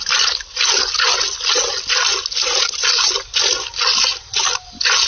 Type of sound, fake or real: real